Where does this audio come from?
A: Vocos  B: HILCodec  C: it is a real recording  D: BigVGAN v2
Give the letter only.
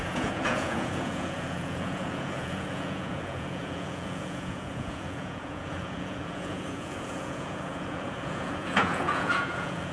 A